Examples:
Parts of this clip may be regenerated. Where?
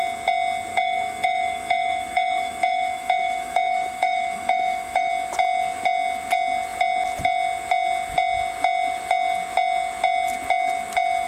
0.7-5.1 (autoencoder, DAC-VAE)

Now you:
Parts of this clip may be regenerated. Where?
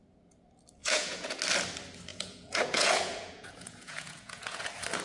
0.8-1.4 (vocoder, Vocos); 2.1-4.6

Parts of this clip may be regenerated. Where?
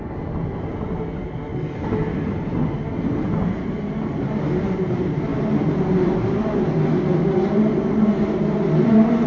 none